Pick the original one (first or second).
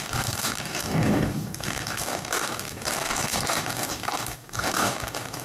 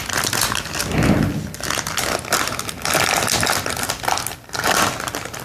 second